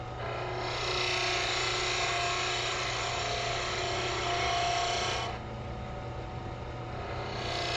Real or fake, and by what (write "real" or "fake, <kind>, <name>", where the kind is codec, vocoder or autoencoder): real